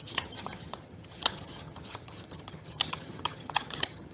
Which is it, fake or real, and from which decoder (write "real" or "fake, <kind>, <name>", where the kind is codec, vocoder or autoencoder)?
fake, vocoder, HiFi-GAN